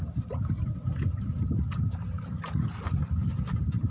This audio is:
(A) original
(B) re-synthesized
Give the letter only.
B